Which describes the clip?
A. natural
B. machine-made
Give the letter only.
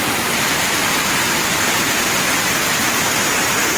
A